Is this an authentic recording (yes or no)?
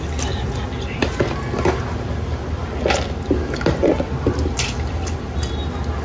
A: yes